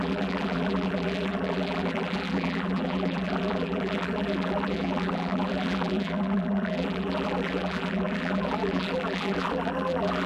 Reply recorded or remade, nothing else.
remade